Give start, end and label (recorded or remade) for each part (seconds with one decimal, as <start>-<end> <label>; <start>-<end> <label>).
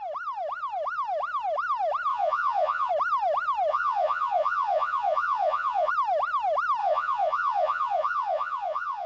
0.0-2.1 recorded; 2.1-2.9 remade; 2.9-3.7 recorded; 3.7-5.9 remade; 5.9-6.8 recorded; 6.8-9.1 remade